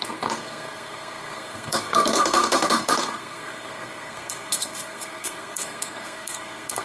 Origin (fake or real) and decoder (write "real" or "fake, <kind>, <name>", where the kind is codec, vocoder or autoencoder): fake, codec, SNAC